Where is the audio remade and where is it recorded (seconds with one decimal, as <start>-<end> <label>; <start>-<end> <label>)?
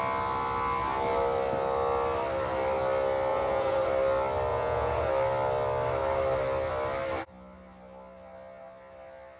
0.0-3.3 recorded; 3.3-3.9 remade; 3.9-4.5 recorded; 4.5-5.1 remade; 5.1-9.4 recorded